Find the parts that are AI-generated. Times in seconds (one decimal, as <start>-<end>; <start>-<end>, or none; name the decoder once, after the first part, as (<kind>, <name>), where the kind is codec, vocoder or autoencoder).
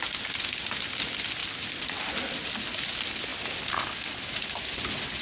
none